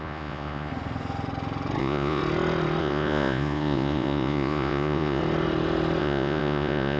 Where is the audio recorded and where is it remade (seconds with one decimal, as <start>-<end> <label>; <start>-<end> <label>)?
0.0-0.7 remade; 0.7-1.8 recorded; 1.8-2.2 remade; 2.2-2.8 recorded; 2.8-5.2 remade; 5.2-6.0 recorded; 6.0-7.0 remade